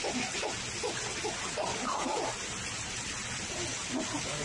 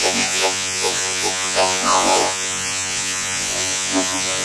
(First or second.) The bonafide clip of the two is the first